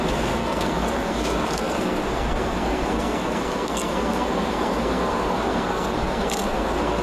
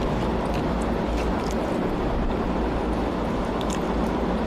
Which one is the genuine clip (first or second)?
second